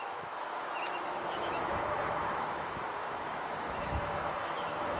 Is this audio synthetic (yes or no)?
yes